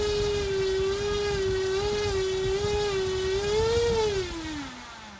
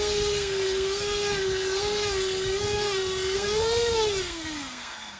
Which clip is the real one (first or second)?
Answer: first